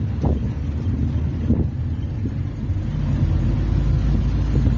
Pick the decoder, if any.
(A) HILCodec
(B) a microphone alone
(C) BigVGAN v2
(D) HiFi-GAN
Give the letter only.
B